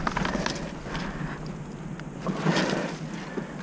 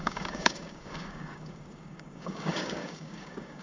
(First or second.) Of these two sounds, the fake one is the second